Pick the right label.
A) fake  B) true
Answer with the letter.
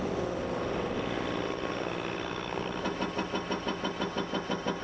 B